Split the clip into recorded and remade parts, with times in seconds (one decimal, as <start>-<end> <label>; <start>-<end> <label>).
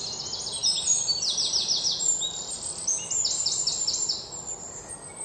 0.0-5.2 recorded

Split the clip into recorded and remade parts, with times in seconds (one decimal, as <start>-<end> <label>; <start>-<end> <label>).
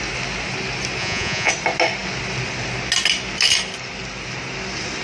0.0-1.0 recorded; 1.0-1.5 remade; 1.5-5.0 recorded